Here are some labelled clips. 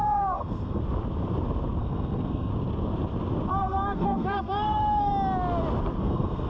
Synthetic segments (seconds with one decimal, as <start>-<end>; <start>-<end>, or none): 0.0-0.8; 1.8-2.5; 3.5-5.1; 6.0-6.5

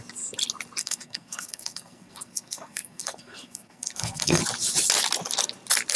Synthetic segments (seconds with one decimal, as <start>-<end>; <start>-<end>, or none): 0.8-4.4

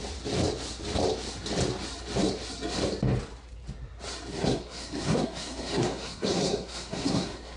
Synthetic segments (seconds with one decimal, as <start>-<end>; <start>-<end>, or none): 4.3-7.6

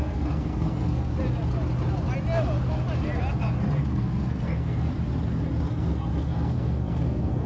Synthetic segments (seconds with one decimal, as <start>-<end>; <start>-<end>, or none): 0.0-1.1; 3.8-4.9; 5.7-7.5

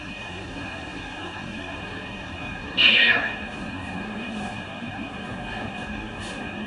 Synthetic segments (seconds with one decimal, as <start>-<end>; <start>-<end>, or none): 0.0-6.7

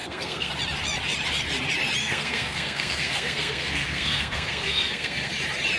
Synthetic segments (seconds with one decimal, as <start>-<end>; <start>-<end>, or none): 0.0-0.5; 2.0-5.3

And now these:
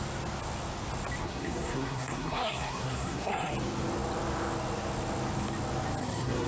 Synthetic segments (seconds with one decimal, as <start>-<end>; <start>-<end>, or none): 1.2-3.5; 6.0-6.5

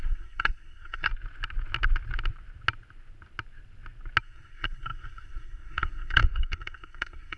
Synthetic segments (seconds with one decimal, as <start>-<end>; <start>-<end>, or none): 0.0-1.1; 4.2-7.4